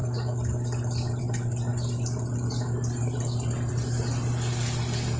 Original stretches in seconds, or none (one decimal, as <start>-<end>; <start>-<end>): 0.0-5.2